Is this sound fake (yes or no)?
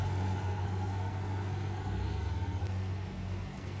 yes